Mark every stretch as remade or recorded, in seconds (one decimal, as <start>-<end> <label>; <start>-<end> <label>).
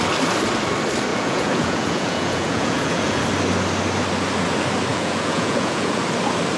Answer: 0.0-1.1 recorded; 1.1-3.2 remade; 3.2-4.9 recorded; 4.9-6.0 remade; 6.0-6.6 recorded